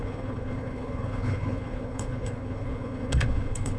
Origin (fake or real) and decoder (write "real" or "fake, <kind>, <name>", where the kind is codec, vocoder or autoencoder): fake, codec, HILCodec